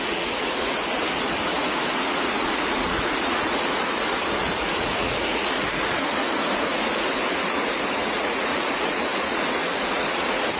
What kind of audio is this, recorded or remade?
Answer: remade